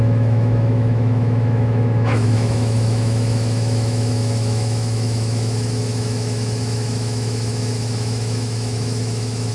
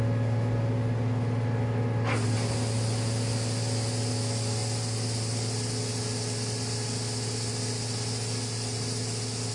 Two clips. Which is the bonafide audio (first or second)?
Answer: second